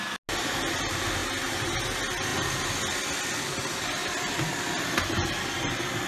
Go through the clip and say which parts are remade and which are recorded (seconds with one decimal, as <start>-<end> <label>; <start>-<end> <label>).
0.0-1.2 recorded; 1.2-1.8 remade; 1.8-6.1 recorded